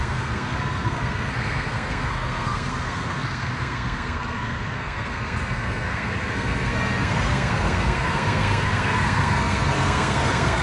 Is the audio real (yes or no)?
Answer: no